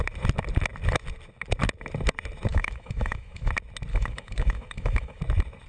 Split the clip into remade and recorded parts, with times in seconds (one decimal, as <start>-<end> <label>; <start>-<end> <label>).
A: 0.0-2.5 recorded; 2.5-3.5 remade; 3.5-3.9 recorded; 3.9-5.2 remade; 5.2-5.7 recorded